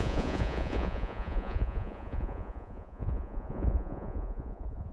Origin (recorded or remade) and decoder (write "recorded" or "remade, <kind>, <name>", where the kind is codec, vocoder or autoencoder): remade, vocoder, Vocos